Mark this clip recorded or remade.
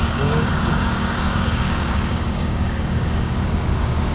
remade